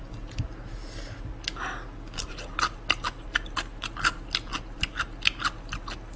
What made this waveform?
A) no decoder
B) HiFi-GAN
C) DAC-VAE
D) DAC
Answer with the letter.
A